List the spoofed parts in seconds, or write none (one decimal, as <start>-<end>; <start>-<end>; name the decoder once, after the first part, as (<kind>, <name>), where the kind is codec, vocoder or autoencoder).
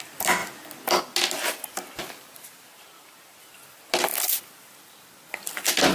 none